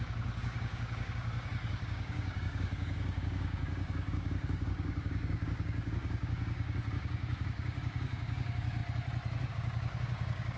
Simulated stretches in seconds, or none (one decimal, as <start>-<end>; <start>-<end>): 0.0-8.8; 9.5-10.6